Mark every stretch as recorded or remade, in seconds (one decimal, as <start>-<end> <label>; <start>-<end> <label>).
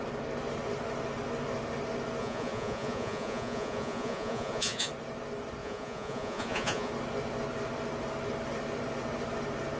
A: 0.0-2.2 recorded; 2.2-4.9 remade; 4.9-5.6 recorded; 5.6-6.9 remade; 6.9-9.8 recorded